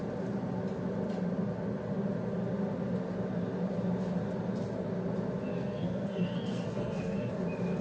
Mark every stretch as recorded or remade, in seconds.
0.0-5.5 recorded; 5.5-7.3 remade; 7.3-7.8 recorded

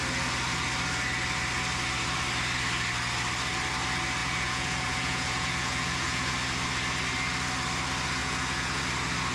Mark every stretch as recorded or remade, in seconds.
0.0-4.2 recorded; 4.2-6.3 remade; 6.3-8.2 recorded; 8.2-8.8 remade; 8.8-9.3 recorded

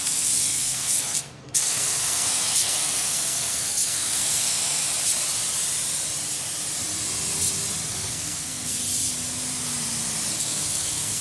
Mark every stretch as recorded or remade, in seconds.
0.0-4.8 remade; 4.8-7.9 recorded; 7.9-8.8 remade; 8.8-10.4 recorded; 10.4-11.2 remade

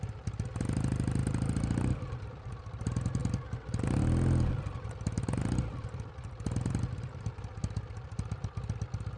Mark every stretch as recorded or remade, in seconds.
0.0-3.2 remade; 3.2-4.5 recorded; 4.5-9.2 remade

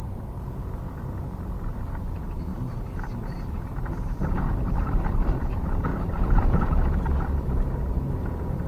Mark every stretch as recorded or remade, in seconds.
0.0-2.5 remade; 2.5-3.5 recorded; 3.5-8.7 remade

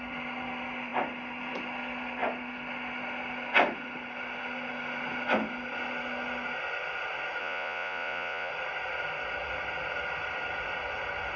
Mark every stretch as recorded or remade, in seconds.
0.0-7.4 recorded; 7.4-8.5 remade; 8.5-11.4 recorded